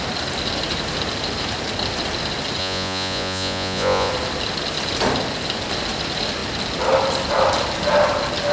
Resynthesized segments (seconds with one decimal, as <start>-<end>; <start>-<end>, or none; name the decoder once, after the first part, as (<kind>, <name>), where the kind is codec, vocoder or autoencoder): 2.6-4.1 (vocoder, Vocos)